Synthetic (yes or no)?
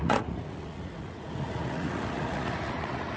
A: yes